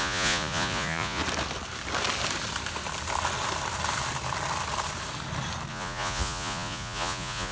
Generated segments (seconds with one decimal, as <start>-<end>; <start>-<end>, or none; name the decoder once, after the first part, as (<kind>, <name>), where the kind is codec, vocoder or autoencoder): 0.0-1.2 (vocoder, Vocos); 5.7-7.5